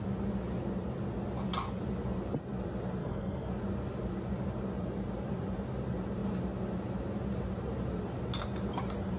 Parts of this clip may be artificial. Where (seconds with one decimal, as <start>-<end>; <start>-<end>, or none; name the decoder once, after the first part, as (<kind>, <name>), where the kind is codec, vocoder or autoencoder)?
3.0-3.5 (codec, SNAC)